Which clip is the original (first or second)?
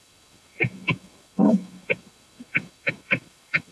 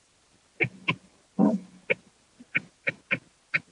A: second